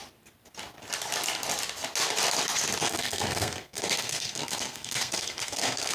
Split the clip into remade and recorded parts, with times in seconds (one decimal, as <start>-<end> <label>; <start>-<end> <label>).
0.0-2.8 recorded; 2.8-5.9 remade